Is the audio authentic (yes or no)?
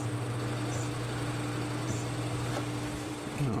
yes